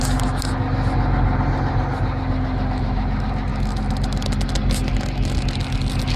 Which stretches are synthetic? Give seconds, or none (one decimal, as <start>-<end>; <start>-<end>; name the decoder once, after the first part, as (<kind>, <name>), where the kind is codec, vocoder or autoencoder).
none